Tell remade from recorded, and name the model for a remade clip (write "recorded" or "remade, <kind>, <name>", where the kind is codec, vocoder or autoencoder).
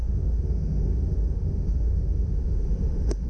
remade, autoencoder, DAC-VAE